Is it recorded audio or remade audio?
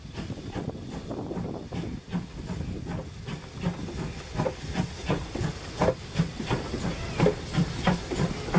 recorded